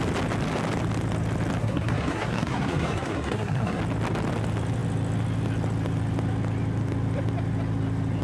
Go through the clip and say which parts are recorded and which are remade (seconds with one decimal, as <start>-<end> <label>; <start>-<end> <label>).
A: 0.0-1.6 recorded; 1.6-3.8 remade; 3.8-8.2 recorded